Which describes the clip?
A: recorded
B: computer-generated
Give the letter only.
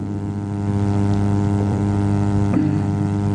B